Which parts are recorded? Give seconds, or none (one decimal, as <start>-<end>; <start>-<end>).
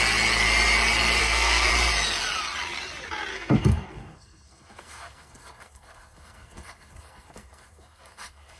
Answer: 0.0-1.2; 1.7-3.3